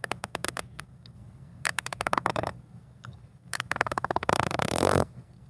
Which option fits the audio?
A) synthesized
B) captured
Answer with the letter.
A